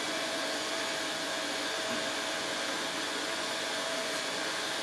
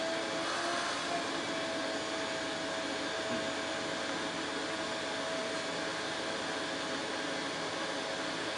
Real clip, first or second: second